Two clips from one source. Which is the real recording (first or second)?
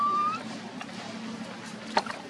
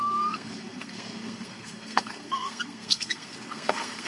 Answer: first